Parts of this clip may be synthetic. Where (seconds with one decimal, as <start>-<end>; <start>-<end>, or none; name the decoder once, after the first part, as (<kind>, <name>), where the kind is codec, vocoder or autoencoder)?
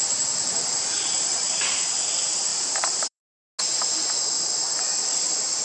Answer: 2.5-3.2 (vocoder, BigVGAN v2)